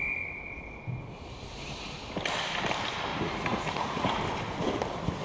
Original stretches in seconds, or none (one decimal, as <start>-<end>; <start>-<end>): 0.0-3.1; 4.2-5.2